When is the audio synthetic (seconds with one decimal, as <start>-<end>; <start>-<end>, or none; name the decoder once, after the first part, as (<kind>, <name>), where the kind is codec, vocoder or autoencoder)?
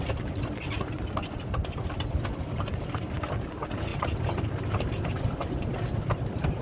none